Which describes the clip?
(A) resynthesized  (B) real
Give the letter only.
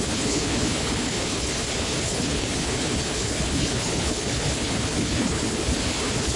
A